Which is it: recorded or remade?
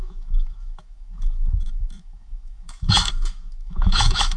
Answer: remade